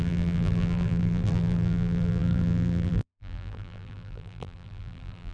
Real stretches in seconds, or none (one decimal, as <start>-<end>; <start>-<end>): none